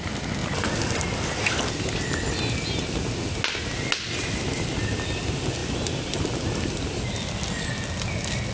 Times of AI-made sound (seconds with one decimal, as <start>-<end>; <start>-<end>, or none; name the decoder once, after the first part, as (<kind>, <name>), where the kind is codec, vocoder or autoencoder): none